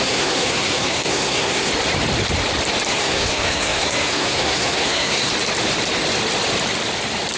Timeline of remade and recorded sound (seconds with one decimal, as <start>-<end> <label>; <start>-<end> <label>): 0.0-1.7 remade; 1.7-2.9 recorded; 2.9-5.3 remade; 5.3-7.4 recorded